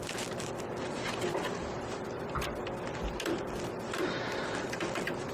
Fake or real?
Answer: fake